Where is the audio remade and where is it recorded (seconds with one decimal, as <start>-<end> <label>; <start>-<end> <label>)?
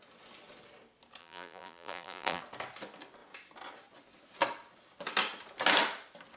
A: 0.0-1.2 recorded; 1.2-2.4 remade; 2.4-6.4 recorded